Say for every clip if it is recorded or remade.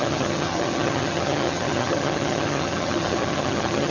remade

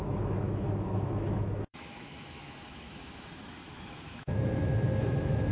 remade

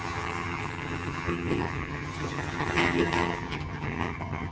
remade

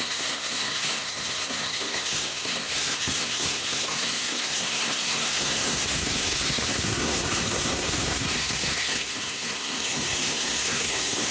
remade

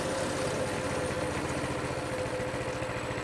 recorded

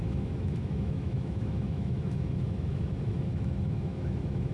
remade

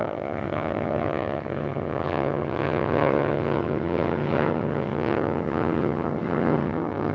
remade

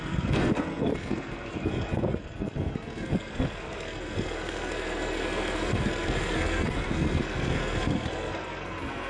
remade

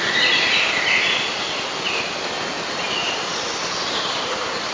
recorded